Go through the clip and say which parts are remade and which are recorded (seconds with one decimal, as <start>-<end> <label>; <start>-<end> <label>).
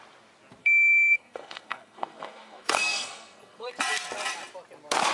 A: 0.0-0.6 recorded; 0.6-3.7 remade; 3.7-5.1 recorded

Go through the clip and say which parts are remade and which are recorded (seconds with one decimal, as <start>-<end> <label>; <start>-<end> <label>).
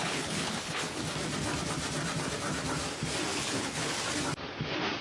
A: 0.0-1.0 remade; 1.0-3.3 recorded; 3.3-3.9 remade; 3.9-5.0 recorded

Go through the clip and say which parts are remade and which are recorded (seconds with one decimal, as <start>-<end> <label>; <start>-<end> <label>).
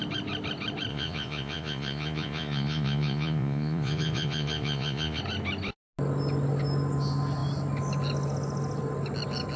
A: 0.0-0.9 recorded; 0.9-5.2 remade; 5.2-9.6 recorded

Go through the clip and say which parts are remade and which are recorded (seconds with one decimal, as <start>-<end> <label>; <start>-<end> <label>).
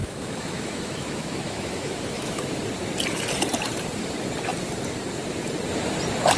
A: 0.0-2.6 remade; 2.6-6.4 recorded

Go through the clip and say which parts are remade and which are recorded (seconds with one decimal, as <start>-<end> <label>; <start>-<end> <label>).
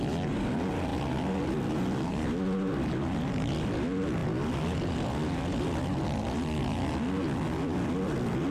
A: 0.0-8.5 recorded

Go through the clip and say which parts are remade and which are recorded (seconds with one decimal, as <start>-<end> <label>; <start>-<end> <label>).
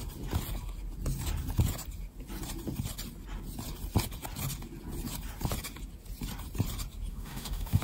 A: 0.0-7.1 recorded; 7.1-7.8 remade